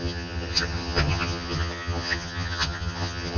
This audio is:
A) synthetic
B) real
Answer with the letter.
A